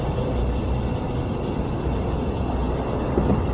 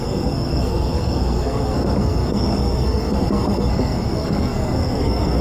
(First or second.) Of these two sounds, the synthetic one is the second